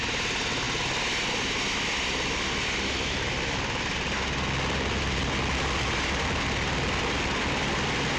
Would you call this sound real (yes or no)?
yes